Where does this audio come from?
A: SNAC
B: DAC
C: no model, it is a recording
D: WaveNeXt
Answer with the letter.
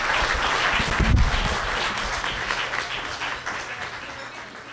C